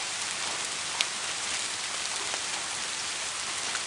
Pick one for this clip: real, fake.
real